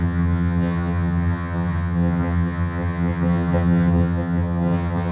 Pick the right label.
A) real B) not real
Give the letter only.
B